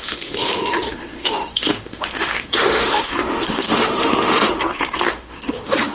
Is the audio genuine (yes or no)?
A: no